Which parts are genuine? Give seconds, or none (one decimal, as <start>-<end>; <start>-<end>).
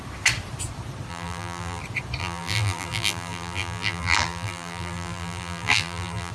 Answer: 0.0-1.1; 1.8-2.2